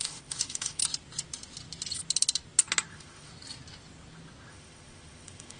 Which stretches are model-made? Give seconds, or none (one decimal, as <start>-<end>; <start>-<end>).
0.0-0.8; 2.9-3.3; 4.5-5.6